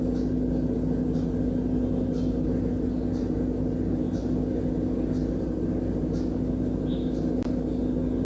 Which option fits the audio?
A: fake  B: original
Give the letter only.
B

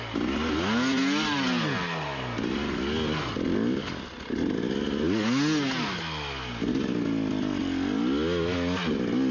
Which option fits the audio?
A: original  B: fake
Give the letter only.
A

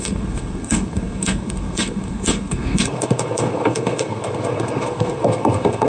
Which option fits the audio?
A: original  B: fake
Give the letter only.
B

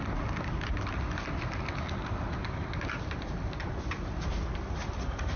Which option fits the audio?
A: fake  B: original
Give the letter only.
B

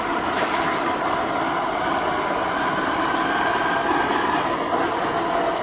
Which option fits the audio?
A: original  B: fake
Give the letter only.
A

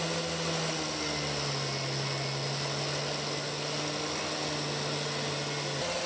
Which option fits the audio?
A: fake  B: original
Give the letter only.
B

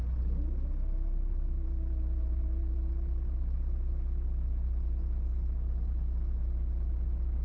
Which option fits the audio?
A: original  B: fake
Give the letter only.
A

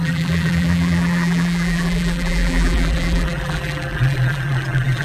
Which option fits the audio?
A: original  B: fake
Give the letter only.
B